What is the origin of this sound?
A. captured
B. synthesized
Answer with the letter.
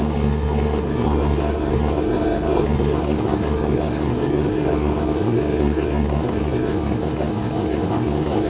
B